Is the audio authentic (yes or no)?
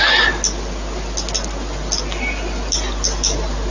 yes